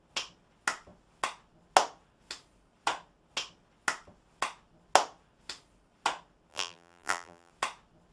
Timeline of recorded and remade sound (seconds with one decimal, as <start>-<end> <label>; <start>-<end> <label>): 0.0-6.5 recorded; 6.5-7.5 remade; 7.5-8.1 recorded